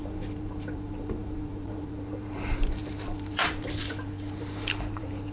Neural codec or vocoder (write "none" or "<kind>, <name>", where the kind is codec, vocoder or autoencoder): vocoder, BigVGAN v2